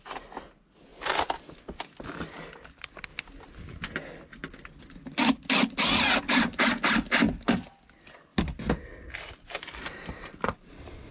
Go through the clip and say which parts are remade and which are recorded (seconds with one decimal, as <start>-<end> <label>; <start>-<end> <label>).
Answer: 0.0-11.1 recorded